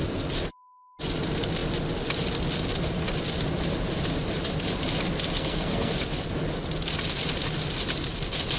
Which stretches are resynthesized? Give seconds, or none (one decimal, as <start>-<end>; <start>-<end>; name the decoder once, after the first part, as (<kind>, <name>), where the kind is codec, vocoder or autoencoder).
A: 5.3-5.9 (codec, SNAC)